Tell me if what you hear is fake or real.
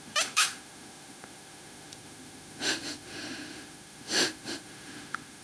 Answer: fake